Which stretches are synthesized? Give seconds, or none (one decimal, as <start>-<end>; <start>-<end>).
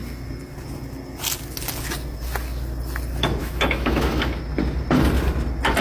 3.4-4.4